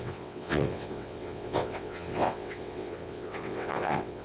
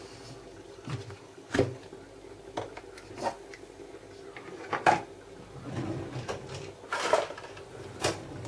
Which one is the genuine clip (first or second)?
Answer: second